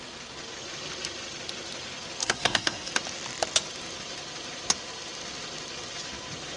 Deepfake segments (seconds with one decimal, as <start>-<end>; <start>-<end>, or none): 2.2-2.9